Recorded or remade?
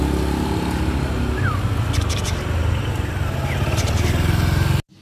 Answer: recorded